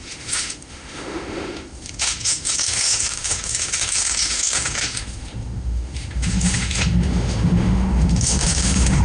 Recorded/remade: remade